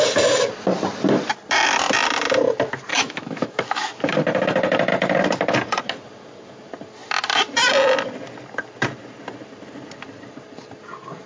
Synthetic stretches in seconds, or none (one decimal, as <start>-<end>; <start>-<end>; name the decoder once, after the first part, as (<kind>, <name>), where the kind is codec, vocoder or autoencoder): 2.9-4.0 (autoencoder, DAC-VAE)